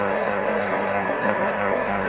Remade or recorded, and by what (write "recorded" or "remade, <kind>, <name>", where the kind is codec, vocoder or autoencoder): remade, codec, SNAC